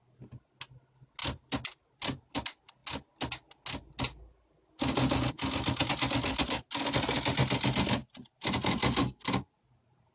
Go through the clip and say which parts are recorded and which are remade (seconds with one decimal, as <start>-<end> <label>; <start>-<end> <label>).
0.0-10.1 recorded